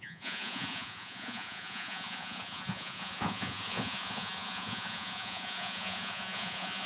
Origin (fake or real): fake